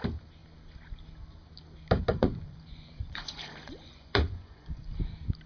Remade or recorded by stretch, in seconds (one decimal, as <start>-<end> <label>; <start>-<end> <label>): 0.0-2.1 recorded; 2.1-4.8 remade; 4.8-5.5 recorded